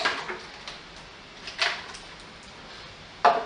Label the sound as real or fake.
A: real